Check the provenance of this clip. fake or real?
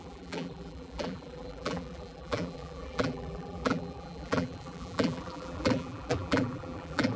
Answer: fake